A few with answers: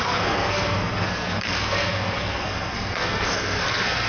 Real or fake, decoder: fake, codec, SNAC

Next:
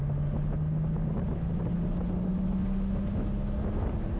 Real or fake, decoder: real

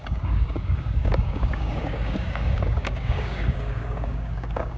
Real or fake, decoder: fake, codec, DAC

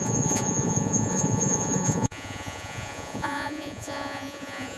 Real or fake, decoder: fake, vocoder, Vocos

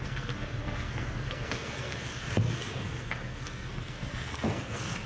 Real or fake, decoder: fake, codec, SNAC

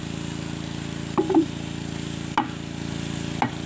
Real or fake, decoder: real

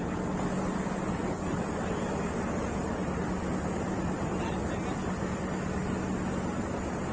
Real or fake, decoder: real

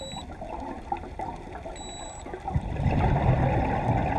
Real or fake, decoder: real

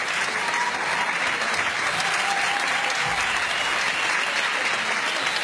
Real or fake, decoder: real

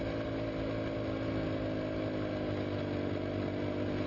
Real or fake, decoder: real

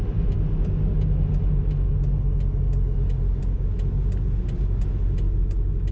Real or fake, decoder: real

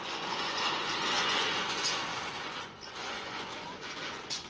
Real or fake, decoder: fake, vocoder, Vocos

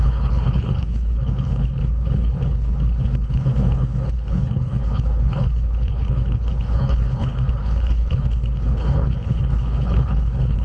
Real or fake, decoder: fake, codec, HILCodec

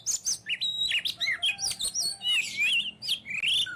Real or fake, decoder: real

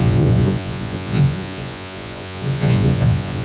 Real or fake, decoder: fake, vocoder, Vocos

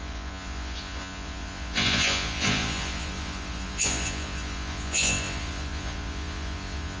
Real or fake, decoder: fake, vocoder, Vocos